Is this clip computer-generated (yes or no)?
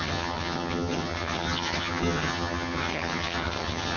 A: yes